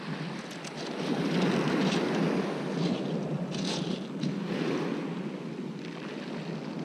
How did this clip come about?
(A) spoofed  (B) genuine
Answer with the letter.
B